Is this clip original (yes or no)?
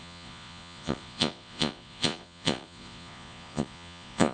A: no